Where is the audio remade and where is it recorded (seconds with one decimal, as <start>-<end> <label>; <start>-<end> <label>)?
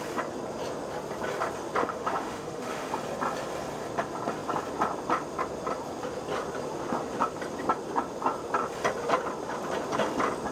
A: 0.0-1.8 recorded; 1.8-2.9 remade; 2.9-10.5 recorded